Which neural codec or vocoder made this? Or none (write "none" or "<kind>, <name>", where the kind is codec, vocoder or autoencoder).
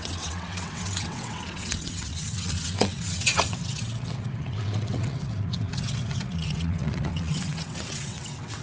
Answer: vocoder, WaveNeXt